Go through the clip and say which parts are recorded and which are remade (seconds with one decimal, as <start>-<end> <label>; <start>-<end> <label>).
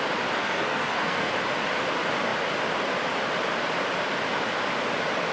0.0-0.4 recorded; 0.4-1.3 remade; 1.3-5.3 recorded